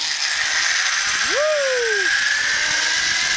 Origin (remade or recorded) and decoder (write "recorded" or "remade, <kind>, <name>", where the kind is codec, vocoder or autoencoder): recorded